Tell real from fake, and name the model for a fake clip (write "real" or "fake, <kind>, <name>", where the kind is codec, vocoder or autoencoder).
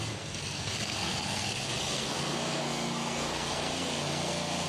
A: fake, codec, SNAC